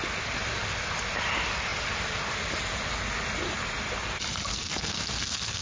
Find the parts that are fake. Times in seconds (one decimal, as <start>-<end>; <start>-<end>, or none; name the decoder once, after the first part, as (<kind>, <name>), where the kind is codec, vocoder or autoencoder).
4.5-5.6 (codec, SNAC)